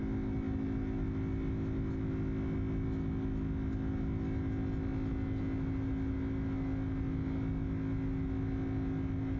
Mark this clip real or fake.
real